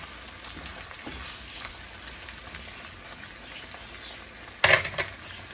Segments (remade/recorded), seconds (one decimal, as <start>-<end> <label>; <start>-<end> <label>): 0.0-0.7 recorded; 0.7-1.7 remade; 1.7-5.5 recorded